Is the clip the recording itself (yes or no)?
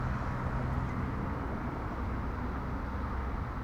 yes